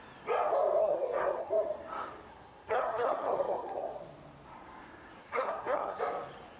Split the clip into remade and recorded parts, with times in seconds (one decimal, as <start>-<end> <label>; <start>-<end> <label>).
0.0-0.8 recorded; 0.8-1.5 remade; 1.5-2.3 recorded; 2.3-4.0 remade; 4.0-5.2 recorded; 5.2-6.0 remade; 6.0-6.6 recorded